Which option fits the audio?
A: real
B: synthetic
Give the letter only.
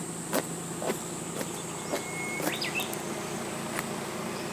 A